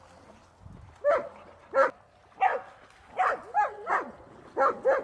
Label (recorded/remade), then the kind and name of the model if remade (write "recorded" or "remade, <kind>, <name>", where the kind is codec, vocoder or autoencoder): recorded